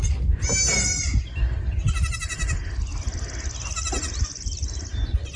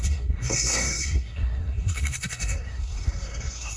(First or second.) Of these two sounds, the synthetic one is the second